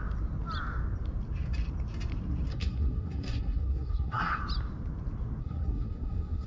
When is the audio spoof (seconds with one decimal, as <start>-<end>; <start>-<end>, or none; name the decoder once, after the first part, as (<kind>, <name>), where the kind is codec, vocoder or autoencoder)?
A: 2.5-4.4 (codec, SNAC); 5.4-6.5